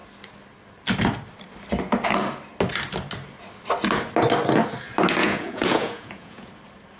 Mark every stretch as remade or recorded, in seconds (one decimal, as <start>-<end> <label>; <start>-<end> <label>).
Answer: 0.0-5.2 recorded; 5.2-6.5 remade; 6.5-7.0 recorded